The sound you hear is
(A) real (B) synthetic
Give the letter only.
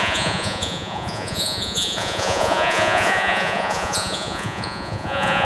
B